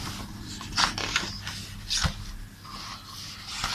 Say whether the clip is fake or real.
real